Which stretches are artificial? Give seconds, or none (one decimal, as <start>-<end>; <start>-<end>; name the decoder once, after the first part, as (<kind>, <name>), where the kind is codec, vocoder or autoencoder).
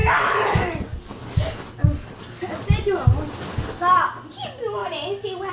none